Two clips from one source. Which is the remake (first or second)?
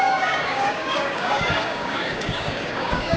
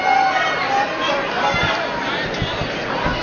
first